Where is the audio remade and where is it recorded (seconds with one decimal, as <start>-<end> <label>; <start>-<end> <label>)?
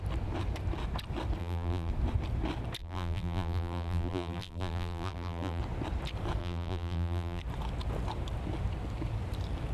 0.0-1.4 recorded; 1.4-1.9 remade; 1.9-2.8 recorded; 2.8-5.6 remade; 5.6-6.4 recorded; 6.4-7.4 remade; 7.4-9.7 recorded